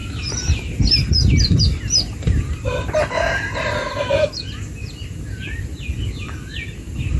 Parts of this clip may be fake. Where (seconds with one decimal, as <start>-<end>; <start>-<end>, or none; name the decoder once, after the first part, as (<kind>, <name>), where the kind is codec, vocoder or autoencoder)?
none

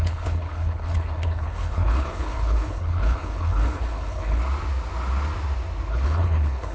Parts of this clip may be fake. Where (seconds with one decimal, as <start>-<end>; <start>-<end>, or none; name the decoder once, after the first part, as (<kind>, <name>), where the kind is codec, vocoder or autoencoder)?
0.0-4.4 (codec, HILCodec); 5.9-6.7

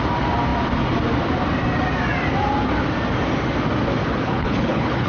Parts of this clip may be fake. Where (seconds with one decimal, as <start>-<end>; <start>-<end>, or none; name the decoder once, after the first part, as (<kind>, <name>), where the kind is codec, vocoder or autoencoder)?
4.0-5.1 (codec, HILCodec)

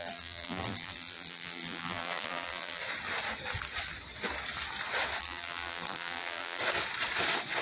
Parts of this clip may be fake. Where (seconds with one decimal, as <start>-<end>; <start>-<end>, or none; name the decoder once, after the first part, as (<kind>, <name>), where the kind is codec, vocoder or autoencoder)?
0.0-2.8 (vocoder, BigVGAN v2); 5.2-6.6

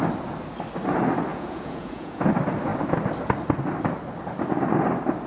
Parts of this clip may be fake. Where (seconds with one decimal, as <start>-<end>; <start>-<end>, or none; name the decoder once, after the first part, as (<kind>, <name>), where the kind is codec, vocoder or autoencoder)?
1.3-2.3 (vocoder, Vocos)

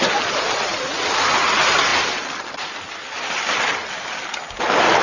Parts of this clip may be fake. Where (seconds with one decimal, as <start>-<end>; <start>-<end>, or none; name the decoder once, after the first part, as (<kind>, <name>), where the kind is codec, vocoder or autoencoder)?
none

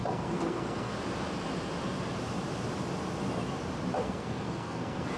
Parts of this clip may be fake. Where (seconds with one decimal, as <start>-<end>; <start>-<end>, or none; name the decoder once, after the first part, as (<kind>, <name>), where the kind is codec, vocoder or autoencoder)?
0.0-0.9 (codec, SNAC); 4.0-5.2

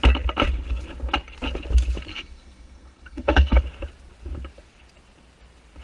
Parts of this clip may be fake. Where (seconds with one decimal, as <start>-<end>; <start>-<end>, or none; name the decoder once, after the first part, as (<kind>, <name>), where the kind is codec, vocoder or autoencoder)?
2.1-3.6 (codec, SNAC)